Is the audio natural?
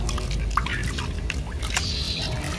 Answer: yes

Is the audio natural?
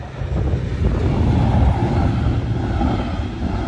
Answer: yes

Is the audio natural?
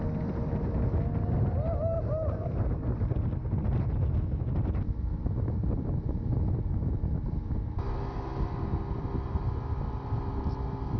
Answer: yes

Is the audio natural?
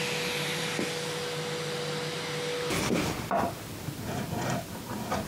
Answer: yes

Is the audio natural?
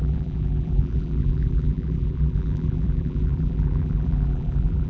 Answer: no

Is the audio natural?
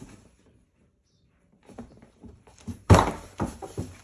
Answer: no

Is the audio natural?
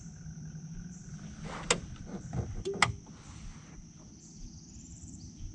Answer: yes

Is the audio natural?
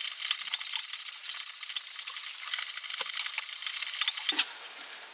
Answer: yes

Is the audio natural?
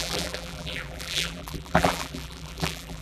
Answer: no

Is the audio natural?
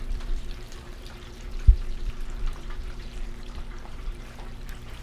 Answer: no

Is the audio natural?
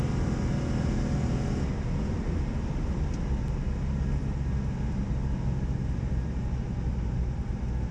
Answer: yes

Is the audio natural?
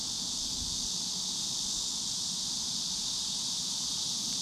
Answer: yes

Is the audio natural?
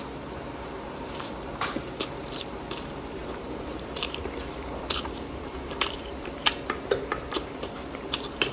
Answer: no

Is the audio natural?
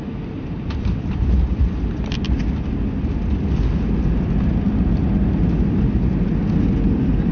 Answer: yes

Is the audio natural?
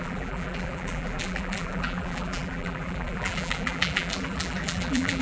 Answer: no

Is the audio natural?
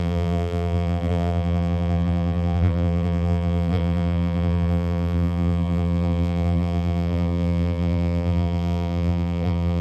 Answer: no